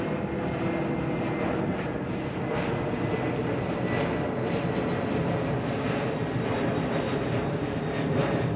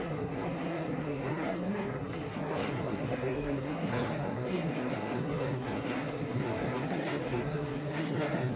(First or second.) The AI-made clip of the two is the second